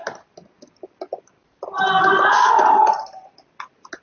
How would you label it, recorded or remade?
recorded